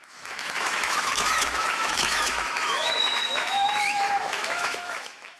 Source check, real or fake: fake